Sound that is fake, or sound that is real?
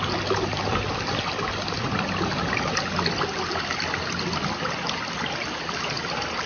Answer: real